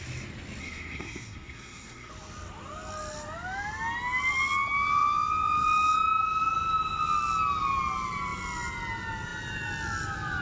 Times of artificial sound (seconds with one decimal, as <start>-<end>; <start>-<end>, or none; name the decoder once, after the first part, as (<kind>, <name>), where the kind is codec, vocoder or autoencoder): 0.6-2.1 (codec, SNAC)